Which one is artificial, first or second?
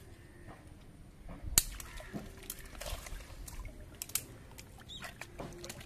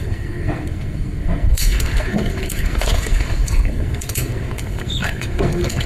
second